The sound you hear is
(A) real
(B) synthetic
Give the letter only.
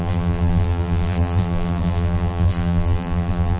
B